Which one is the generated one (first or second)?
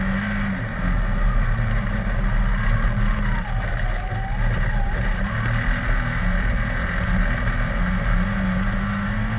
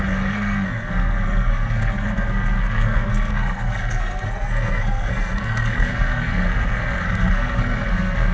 second